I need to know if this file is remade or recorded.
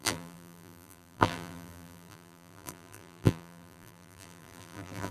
remade